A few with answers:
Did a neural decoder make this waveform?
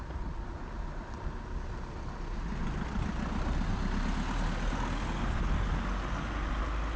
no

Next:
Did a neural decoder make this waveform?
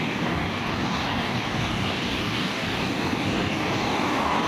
yes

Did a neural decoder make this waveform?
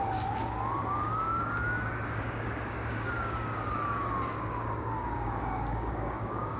yes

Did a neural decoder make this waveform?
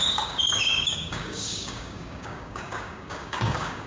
yes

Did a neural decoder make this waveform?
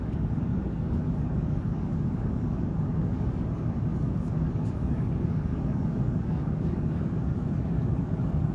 yes